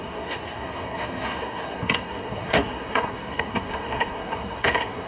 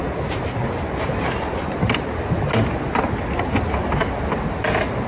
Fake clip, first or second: first